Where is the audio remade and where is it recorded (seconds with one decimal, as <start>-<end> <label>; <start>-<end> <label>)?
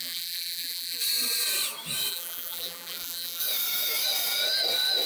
0.0-1.0 remade; 1.0-2.1 recorded; 2.1-3.4 remade; 3.4-5.1 recorded